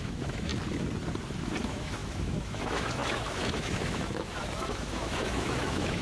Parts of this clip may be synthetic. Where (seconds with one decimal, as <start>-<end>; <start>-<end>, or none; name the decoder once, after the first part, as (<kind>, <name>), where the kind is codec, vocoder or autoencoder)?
0.0-0.5 (autoencoder, DAC-VAE); 1.6-6.0